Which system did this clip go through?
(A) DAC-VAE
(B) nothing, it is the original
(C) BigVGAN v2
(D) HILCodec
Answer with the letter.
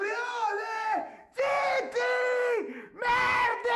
A